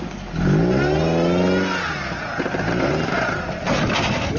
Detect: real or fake real